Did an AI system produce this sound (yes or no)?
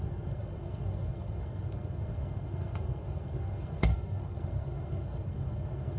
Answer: yes